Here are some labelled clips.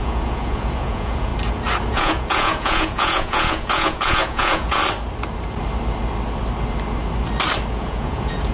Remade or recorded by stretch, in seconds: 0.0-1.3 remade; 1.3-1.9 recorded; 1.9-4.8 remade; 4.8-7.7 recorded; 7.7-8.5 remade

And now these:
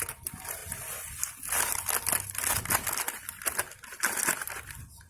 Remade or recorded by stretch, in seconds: 0.0-5.1 recorded

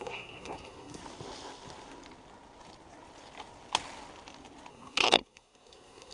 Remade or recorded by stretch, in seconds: 0.0-1.0 remade; 1.0-4.7 recorded; 4.7-6.1 remade